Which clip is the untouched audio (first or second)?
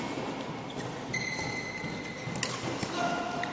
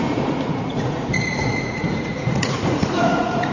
first